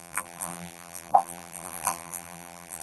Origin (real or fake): fake